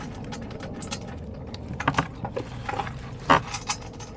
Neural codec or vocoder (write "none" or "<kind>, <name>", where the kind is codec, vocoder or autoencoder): none